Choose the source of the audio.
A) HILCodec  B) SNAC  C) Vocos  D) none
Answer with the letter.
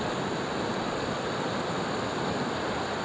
D